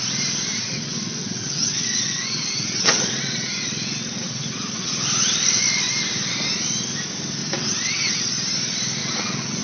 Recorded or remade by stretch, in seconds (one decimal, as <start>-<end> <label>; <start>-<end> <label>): 0.0-0.5 recorded; 0.5-4.9 remade; 4.9-7.4 recorded; 7.4-8.3 remade; 8.3-9.0 recorded; 9.0-9.6 remade